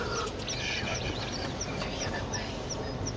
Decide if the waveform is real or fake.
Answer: real